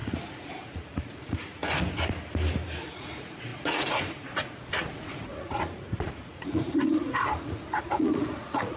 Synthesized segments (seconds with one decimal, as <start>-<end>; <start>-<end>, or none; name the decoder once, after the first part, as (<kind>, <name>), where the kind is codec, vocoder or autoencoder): 0.0-1.6 (vocoder, Vocos); 2.9-8.8